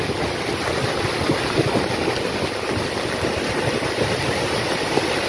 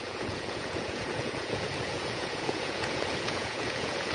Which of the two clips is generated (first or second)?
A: second